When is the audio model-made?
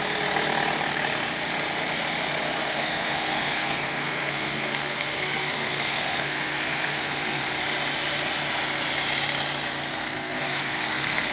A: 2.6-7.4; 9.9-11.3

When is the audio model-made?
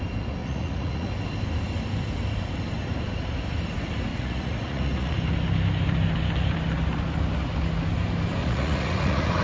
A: 0.4-1.1; 4.1-5.1; 8.4-9.4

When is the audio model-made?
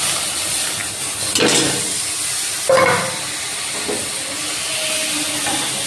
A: none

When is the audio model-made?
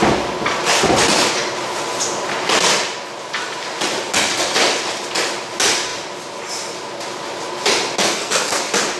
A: 8.0-8.6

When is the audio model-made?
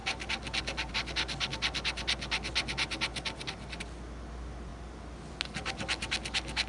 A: none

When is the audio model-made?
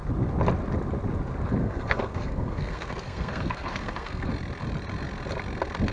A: 1.6-4.3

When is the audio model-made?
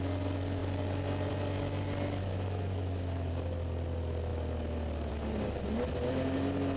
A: 2.2-3.3